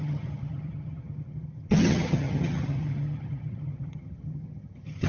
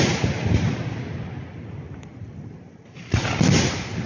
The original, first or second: second